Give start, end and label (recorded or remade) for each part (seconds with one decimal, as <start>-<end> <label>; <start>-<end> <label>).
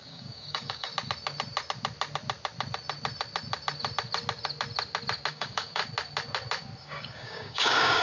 0.0-0.9 remade; 0.9-5.3 recorded; 5.3-5.8 remade; 5.8-6.8 recorded; 6.8-8.0 remade